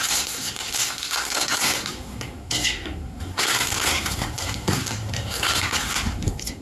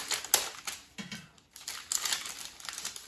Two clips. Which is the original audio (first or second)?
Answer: second